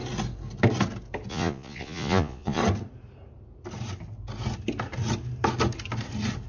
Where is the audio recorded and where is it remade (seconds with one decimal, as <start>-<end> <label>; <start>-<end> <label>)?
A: 0.0-1.3 recorded; 1.3-2.6 remade; 2.6-6.5 recorded